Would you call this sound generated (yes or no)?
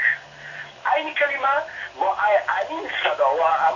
no